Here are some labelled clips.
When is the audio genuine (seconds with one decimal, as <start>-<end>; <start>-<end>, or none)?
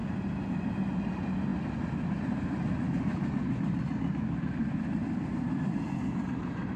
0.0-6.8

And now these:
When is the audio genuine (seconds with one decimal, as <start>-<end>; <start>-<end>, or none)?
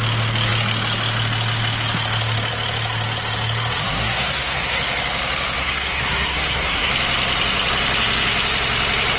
0.0-3.8; 4.8-5.6; 6.9-9.2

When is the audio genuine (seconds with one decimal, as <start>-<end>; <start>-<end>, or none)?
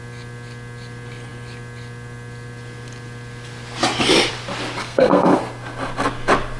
0.0-4.8; 5.4-6.6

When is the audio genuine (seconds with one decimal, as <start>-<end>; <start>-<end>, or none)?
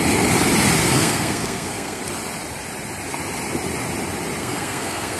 0.0-0.8; 2.0-4.4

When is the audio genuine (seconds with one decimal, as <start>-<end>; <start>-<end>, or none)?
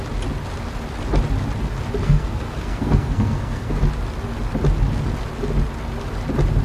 0.0-2.0; 3.8-6.6